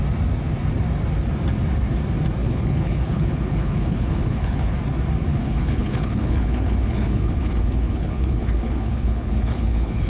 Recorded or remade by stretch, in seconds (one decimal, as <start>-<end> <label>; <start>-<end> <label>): 0.0-2.4 recorded; 2.4-4.7 remade; 4.7-5.3 recorded; 5.3-10.1 remade